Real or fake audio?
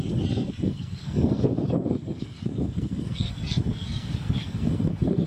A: fake